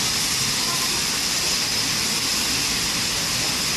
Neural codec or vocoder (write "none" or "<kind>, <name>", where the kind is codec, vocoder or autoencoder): none